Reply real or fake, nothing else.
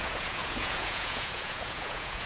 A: fake